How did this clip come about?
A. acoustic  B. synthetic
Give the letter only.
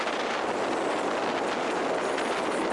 A